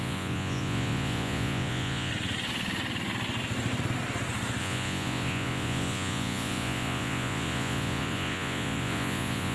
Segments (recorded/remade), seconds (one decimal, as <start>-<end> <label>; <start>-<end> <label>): 0.0-2.1 remade; 2.1-4.6 recorded; 4.6-9.5 remade